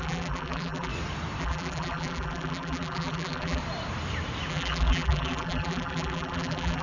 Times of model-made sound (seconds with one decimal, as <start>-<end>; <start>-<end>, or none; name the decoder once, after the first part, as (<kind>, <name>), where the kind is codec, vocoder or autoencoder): 0.0-0.9 (vocoder, BigVGAN v2); 1.4-3.6; 4.5-6.8